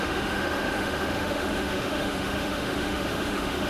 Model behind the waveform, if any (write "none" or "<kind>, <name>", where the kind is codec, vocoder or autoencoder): autoencoder, DAC-VAE